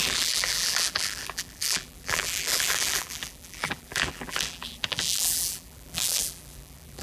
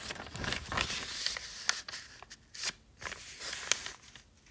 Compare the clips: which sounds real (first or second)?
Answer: second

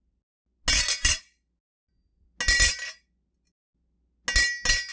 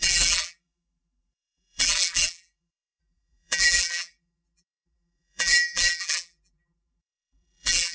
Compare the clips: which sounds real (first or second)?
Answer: first